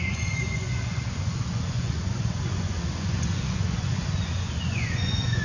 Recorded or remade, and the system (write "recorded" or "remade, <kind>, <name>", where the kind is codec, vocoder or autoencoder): remade, vocoder, Vocos